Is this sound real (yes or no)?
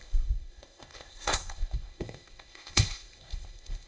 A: no